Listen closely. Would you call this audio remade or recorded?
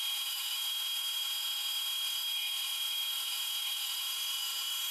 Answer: remade